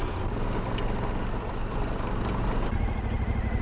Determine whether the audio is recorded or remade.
recorded